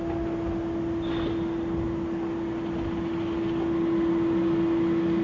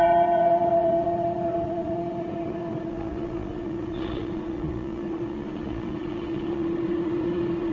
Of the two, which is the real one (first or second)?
first